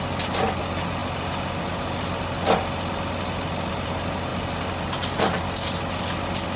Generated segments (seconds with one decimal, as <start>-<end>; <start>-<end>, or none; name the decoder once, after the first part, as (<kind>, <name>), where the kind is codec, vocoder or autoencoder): none